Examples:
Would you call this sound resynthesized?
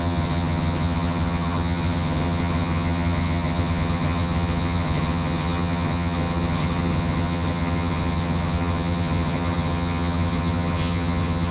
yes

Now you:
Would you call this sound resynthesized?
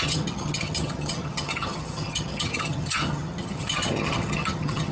yes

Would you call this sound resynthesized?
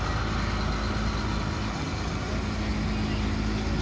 no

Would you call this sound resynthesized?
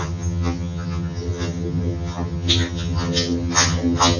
yes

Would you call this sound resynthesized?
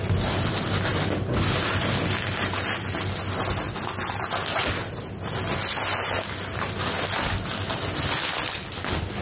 no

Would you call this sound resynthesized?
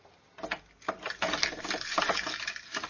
no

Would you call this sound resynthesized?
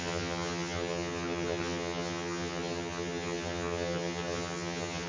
yes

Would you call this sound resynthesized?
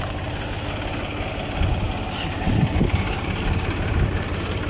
no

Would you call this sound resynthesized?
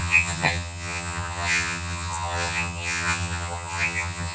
yes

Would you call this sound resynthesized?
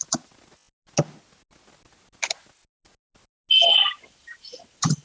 no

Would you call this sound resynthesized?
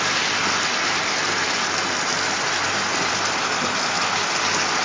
no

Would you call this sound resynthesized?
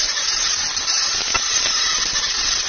no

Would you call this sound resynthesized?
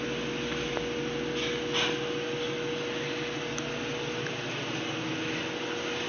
no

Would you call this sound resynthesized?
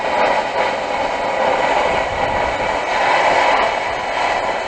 no